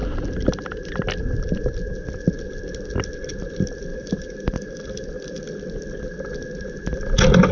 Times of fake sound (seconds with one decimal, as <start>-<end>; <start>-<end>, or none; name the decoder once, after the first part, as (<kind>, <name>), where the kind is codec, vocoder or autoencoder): 3.9-5.4 (vocoder, BigVGAN v2)